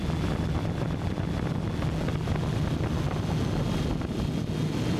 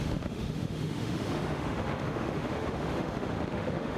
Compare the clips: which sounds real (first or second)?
first